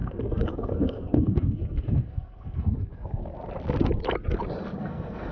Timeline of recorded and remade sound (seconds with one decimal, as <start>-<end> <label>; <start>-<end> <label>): 0.0-3.3 remade; 3.3-4.8 recorded; 4.8-5.3 remade